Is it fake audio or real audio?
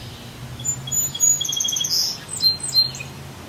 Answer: real